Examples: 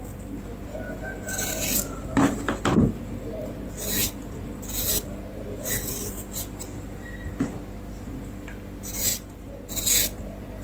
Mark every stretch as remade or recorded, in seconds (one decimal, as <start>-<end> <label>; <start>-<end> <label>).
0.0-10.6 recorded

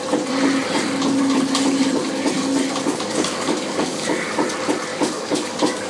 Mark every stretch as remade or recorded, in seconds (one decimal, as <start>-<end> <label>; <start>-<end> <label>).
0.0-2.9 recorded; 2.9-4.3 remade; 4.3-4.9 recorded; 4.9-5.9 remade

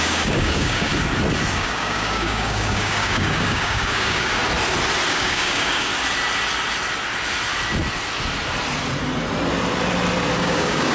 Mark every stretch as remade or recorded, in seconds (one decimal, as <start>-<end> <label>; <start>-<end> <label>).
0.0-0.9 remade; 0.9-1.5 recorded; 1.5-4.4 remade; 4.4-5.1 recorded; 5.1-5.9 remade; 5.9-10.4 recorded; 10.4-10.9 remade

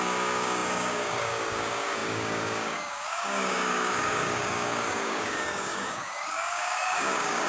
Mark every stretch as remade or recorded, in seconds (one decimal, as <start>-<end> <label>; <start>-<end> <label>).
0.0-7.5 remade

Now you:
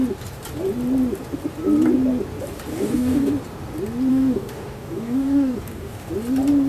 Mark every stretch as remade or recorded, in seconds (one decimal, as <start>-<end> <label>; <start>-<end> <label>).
0.0-2.7 recorded; 2.7-3.3 remade; 3.3-4.1 recorded; 4.1-6.1 remade; 6.1-6.7 recorded